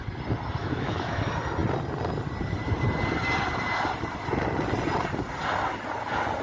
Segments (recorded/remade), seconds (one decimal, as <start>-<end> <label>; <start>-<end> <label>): 0.0-0.6 recorded; 0.6-1.2 remade; 1.2-6.4 recorded